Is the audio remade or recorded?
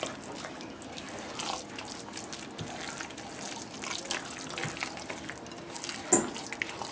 recorded